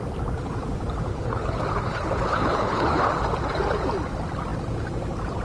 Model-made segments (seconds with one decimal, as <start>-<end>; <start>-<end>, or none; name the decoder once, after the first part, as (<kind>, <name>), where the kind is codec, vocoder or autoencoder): 1.1-3.1 (codec, HILCodec)